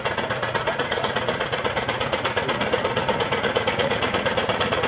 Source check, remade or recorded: remade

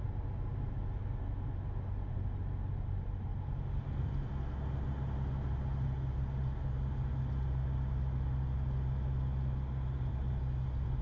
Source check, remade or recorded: recorded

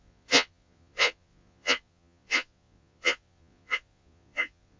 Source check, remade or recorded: remade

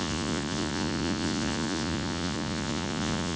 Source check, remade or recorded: remade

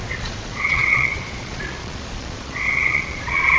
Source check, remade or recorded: remade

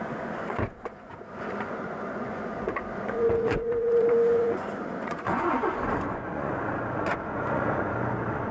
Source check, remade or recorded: remade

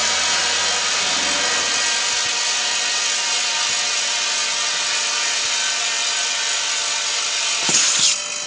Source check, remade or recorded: recorded